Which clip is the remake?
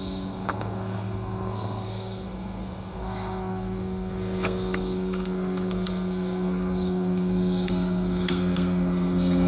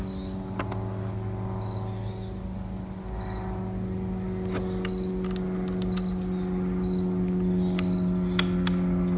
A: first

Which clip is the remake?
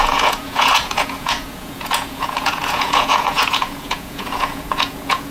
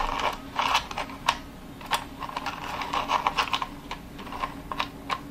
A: first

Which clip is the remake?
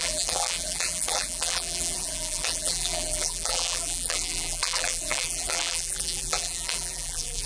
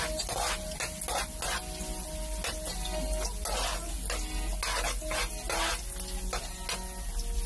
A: first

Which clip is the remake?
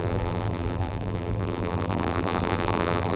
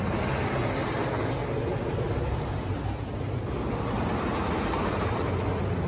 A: first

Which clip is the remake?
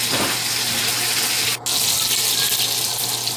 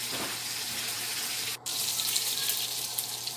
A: second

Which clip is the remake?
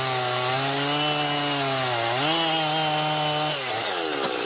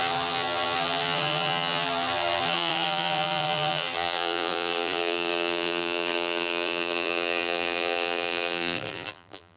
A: second